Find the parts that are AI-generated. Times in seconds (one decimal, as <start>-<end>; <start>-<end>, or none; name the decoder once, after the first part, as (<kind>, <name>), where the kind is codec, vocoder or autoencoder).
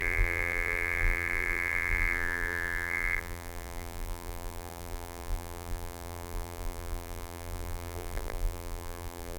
0.0-9.4 (vocoder, BigVGAN v2)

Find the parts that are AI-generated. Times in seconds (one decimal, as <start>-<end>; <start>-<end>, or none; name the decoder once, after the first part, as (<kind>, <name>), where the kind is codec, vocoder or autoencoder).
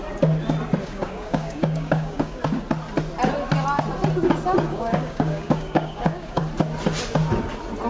0.8-2.4 (codec, DAC); 4.7-6.4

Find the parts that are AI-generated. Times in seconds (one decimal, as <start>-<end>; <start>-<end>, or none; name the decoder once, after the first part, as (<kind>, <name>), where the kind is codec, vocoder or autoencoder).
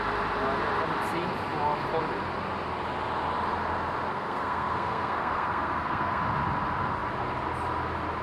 4.1-6.2 (codec, SNAC)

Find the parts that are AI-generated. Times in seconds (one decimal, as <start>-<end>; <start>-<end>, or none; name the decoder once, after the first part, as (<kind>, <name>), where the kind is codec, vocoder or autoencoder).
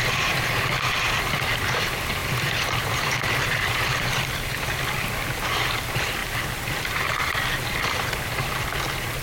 2.2-4.2 (vocoder, BigVGAN v2); 6.2-7.3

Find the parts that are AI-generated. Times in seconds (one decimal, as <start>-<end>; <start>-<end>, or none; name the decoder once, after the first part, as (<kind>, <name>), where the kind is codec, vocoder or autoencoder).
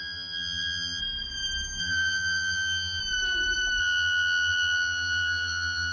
0.0-1.0 (vocoder, HiFi-GAN); 1.8-3.0; 3.8-5.9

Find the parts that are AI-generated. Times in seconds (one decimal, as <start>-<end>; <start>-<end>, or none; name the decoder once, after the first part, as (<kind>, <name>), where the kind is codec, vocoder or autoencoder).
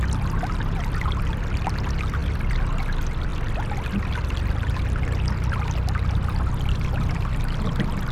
2.2-2.8 (vocoder, BigVGAN v2)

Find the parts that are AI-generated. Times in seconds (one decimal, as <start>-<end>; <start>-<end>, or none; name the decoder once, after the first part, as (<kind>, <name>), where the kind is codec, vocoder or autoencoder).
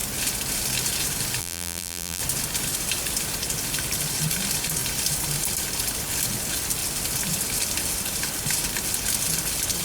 1.4-2.2 (vocoder, BigVGAN v2)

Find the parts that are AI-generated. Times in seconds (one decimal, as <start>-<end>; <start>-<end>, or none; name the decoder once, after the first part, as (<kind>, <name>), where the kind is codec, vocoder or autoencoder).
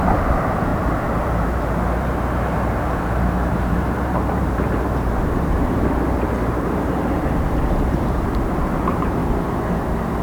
0.0-9.2 (vocoder, BigVGAN v2)